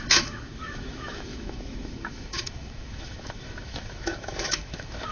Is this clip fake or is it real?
fake